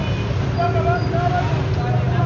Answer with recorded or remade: recorded